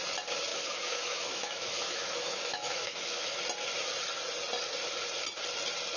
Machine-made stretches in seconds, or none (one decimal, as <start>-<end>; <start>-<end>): 0.5-3.4